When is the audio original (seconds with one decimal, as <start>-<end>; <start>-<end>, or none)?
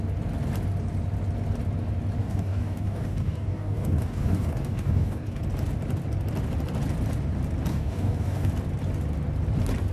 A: 0.0-2.2; 5.4-7.7; 8.5-9.9